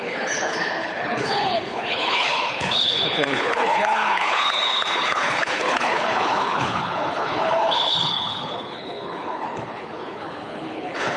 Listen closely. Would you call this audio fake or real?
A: fake